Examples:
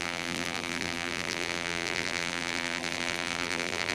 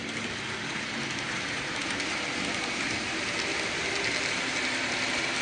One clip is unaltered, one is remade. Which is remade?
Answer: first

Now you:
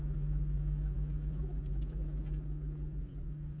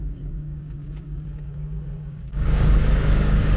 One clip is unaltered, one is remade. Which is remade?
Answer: second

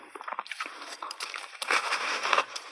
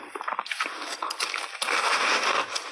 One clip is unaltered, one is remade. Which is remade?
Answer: first